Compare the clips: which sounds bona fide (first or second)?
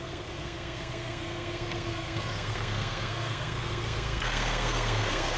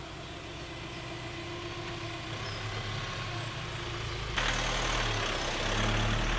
second